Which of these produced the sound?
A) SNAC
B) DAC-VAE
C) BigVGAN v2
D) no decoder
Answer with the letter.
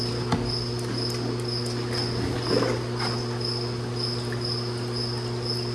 D